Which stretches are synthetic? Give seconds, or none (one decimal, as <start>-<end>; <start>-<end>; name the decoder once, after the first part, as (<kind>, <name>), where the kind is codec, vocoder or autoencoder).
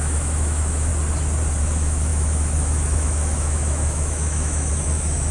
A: 0.0-0.9 (autoencoder, DAC-VAE); 1.6-5.3